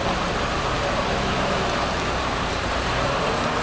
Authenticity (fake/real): fake